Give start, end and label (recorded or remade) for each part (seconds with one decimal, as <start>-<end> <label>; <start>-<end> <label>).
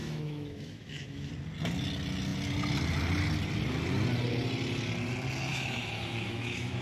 0.0-1.3 remade; 1.3-5.5 recorded; 5.5-6.8 remade